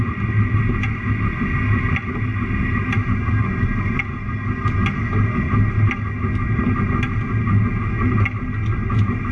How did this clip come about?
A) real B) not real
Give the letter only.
A